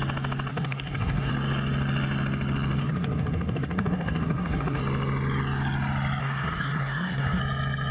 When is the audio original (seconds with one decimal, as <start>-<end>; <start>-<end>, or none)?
0.0-0.5; 1.3-2.8; 4.8-6.2; 7.4-7.9